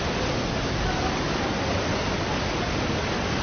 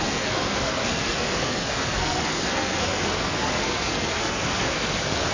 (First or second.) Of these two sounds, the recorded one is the first